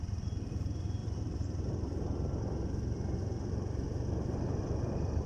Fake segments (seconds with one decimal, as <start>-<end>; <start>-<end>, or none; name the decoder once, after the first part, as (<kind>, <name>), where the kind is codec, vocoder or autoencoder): none